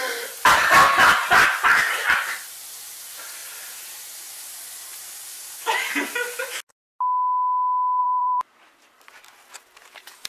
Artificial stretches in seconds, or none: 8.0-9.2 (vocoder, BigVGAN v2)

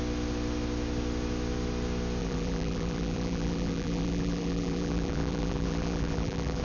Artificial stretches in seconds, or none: 2.2-6.6 (vocoder, BigVGAN v2)

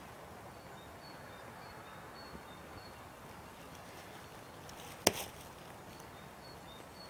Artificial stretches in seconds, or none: none

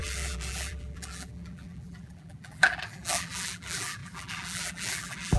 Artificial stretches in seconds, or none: 0.0-5.4 (vocoder, BigVGAN v2)

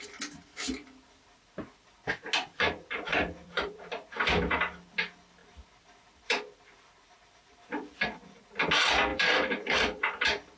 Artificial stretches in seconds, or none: 3.1-3.9 (vocoder, BigVGAN v2); 5.4-8.4; 9.1-10.6

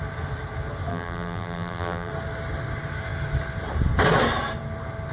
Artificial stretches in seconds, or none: 0.9-2.1 (vocoder, BigVGAN v2)

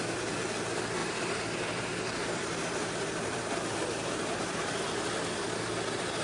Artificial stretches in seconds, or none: 1.0-4.7 (vocoder, BigVGAN v2)